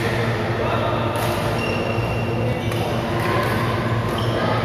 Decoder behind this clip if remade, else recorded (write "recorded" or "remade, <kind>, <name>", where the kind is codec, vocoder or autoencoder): recorded